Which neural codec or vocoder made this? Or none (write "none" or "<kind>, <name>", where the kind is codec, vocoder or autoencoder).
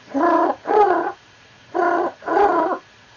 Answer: vocoder, Vocos